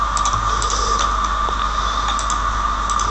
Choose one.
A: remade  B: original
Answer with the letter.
B